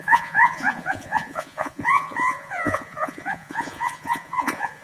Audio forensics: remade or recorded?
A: remade